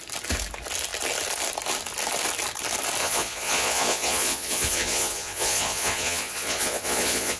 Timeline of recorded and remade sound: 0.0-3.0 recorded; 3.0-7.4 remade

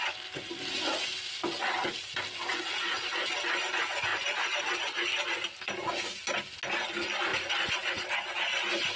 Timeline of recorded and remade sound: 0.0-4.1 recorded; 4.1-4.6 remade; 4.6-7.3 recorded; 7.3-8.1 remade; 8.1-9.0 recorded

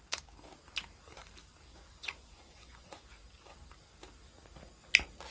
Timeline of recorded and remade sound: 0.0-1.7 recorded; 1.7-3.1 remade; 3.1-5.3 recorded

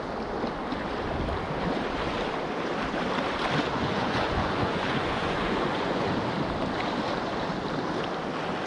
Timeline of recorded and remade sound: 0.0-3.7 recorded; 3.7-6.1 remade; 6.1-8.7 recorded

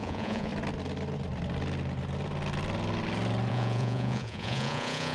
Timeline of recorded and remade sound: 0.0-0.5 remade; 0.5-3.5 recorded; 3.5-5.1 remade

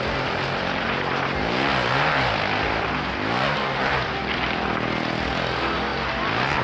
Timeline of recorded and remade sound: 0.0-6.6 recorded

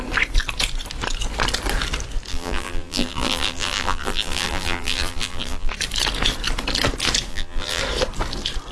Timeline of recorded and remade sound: 0.0-2.3 recorded; 2.3-5.7 remade; 5.7-7.3 recorded; 7.3-7.8 remade; 7.8-8.7 recorded

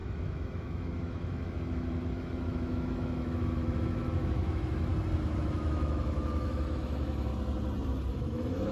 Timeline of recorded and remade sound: 0.0-4.9 remade; 4.9-5.5 recorded; 5.5-7.3 remade; 7.3-8.1 recorded; 8.1-8.7 remade